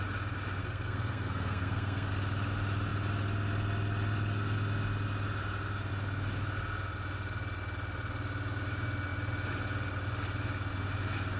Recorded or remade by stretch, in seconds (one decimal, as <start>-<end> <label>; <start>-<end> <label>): 0.0-0.6 recorded; 0.6-2.1 remade; 2.1-11.4 recorded

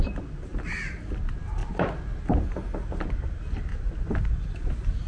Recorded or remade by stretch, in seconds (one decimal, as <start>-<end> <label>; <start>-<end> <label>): 0.0-3.7 recorded; 3.7-4.2 remade; 4.2-5.1 recorded

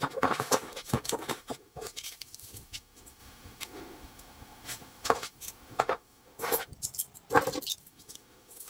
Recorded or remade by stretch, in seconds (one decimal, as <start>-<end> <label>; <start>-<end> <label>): 0.0-6.7 remade; 6.7-7.8 recorded; 7.8-8.7 remade